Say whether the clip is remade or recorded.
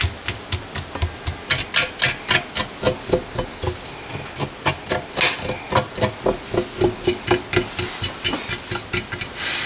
recorded